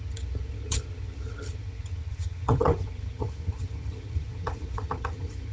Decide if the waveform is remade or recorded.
remade